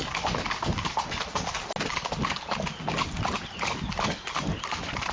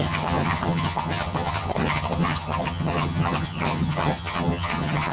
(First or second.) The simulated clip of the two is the second